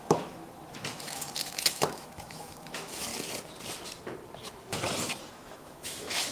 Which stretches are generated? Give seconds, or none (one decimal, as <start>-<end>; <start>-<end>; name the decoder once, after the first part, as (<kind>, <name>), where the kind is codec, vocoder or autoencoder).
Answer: 0.0-3.1 (autoencoder, DAC-VAE); 5.3-6.3